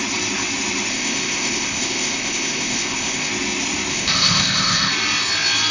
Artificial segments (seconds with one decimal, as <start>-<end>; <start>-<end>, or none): 0.9-3.3; 3.9-4.9